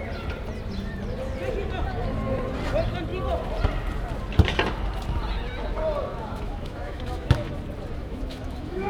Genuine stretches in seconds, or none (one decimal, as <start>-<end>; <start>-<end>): 0.0-6.1; 7.5-8.0